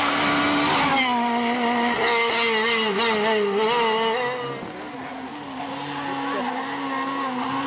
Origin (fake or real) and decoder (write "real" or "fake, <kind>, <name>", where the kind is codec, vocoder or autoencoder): real